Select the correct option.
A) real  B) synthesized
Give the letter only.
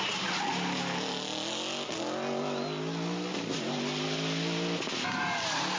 A